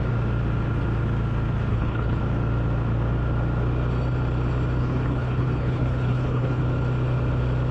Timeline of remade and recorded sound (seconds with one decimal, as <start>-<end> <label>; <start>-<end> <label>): 0.0-1.7 recorded; 1.7-2.2 remade; 2.2-4.8 recorded; 4.8-6.6 remade; 6.6-7.7 recorded